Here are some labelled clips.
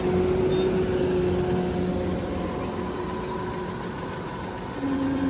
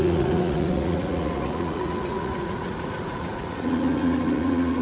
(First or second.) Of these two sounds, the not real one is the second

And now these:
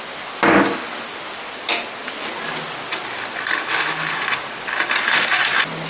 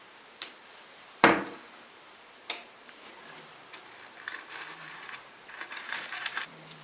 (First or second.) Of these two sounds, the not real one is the second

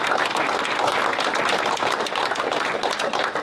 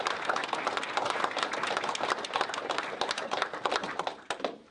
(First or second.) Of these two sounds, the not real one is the second